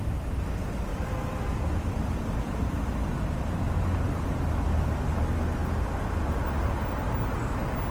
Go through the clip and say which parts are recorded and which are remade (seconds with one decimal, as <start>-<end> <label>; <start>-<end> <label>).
0.0-0.9 recorded; 0.9-3.7 remade; 3.7-7.9 recorded